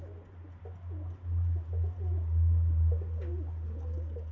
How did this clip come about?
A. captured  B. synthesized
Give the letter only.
A